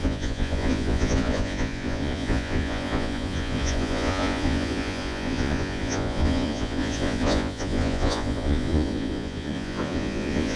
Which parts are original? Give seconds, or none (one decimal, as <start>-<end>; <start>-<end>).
none